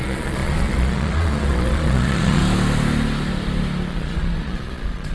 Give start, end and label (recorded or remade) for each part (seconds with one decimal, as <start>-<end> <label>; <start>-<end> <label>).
0.0-2.4 remade; 2.4-3.9 recorded; 3.9-5.1 remade